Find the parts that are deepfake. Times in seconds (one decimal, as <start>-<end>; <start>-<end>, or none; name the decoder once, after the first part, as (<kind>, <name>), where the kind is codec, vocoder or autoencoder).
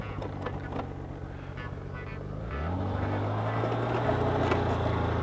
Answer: none